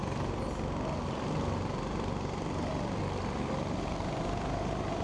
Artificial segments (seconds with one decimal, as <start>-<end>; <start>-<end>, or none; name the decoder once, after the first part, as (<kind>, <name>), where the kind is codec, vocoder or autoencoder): 0.0-3.0 (vocoder, BigVGAN v2)